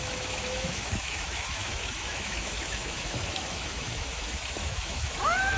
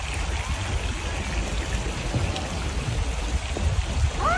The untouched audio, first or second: second